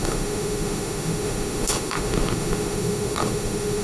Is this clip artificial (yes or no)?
yes